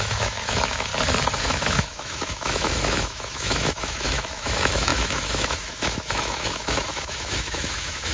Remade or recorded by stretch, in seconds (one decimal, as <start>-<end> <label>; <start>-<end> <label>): 0.0-0.9 remade; 0.9-1.4 recorded; 1.4-8.1 remade